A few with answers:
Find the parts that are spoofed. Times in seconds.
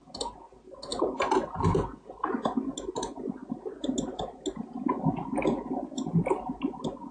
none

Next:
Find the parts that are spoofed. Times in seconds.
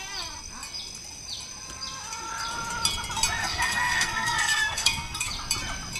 3.4-5.3 (codec, SNAC)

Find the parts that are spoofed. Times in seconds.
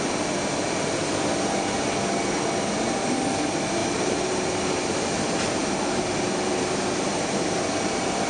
3.8-4.5 (vocoder, BigVGAN v2)